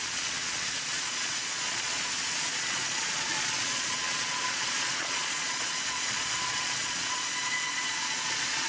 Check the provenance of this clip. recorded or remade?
remade